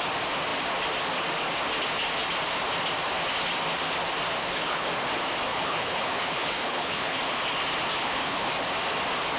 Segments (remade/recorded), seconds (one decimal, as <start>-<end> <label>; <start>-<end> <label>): 0.0-4.4 recorded; 4.4-4.9 remade; 4.9-5.5 recorded; 5.5-7.2 remade; 7.2-8.0 recorded; 8.0-8.5 remade; 8.5-9.4 recorded